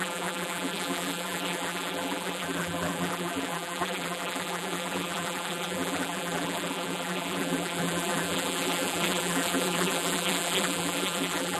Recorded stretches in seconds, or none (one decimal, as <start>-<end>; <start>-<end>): none